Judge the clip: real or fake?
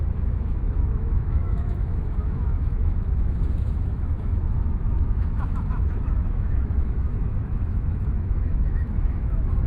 fake